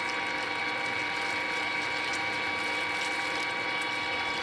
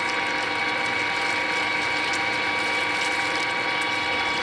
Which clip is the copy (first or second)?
second